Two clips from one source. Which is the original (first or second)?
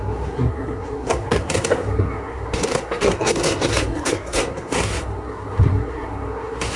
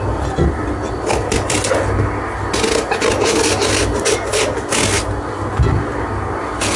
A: second